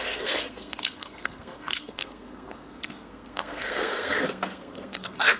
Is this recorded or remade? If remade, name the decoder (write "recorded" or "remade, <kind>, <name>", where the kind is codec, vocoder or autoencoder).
remade, codec, SNAC